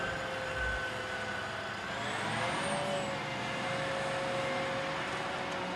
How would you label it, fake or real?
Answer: real